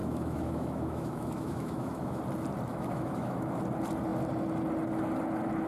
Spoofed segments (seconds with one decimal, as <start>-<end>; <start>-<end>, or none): 0.0-2.2; 2.7-3.6